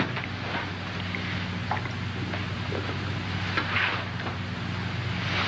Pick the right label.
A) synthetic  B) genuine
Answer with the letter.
B